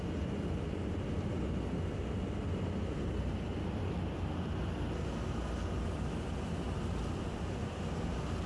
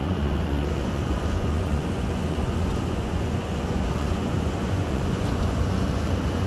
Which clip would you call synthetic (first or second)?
second